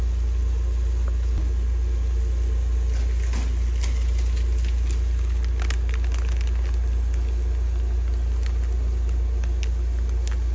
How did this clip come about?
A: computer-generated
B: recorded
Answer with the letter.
B